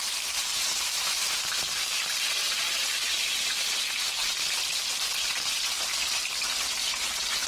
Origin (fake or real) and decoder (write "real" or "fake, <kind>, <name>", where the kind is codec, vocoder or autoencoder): fake, vocoder, BigVGAN v2